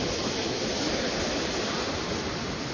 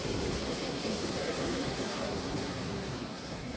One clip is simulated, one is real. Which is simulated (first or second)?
second